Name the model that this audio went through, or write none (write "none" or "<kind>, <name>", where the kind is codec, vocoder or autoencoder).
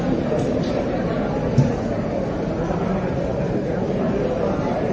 vocoder, BigVGAN v2